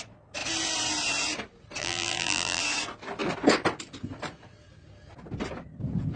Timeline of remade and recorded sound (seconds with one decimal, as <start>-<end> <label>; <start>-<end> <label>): 0.0-1.8 recorded; 1.8-2.6 remade; 2.6-6.2 recorded